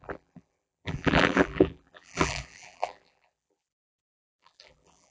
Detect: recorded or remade remade